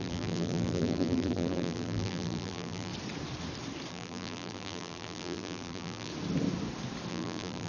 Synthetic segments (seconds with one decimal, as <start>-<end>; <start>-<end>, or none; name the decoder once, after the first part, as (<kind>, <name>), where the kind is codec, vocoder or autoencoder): 0.0-2.9 (vocoder, BigVGAN v2); 3.9-6.1; 7.1-7.7